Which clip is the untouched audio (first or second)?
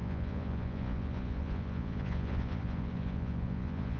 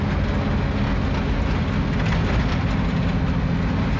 second